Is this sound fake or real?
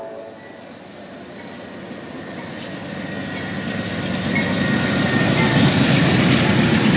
real